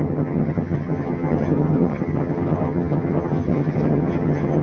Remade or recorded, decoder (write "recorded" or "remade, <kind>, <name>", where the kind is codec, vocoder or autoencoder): remade, vocoder, HiFi-GAN